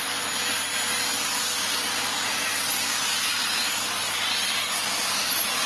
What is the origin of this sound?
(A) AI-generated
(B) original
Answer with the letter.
B